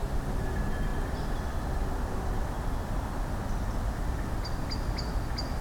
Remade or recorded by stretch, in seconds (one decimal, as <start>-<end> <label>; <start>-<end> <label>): 0.0-5.6 recorded